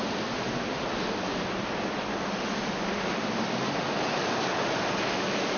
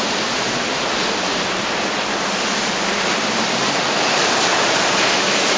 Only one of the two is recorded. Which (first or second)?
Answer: first